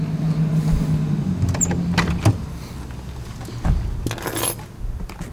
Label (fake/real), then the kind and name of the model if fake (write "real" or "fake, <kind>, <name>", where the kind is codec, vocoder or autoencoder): real